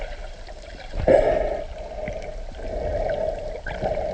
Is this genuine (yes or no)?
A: yes